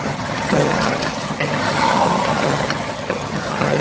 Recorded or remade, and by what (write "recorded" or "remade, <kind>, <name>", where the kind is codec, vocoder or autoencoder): remade, vocoder, HiFi-GAN